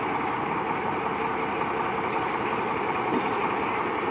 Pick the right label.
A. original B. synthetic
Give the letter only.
A